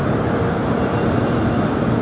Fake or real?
real